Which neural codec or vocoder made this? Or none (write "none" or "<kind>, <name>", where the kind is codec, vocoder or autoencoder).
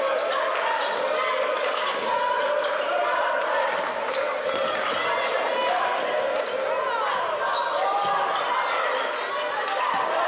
none